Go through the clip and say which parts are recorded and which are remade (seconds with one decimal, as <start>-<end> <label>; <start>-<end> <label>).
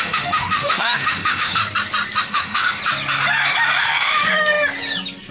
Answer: 0.0-1.6 remade; 1.6-2.2 recorded; 2.2-2.8 remade; 2.8-3.8 recorded; 3.8-4.3 remade; 4.3-5.3 recorded